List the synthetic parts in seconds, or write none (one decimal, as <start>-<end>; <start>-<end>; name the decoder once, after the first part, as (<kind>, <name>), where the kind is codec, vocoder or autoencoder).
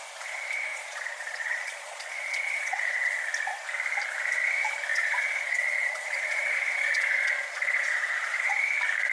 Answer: 0.7-3.2 (vocoder, Vocos); 4.9-8.6